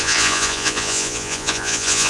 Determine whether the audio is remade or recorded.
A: remade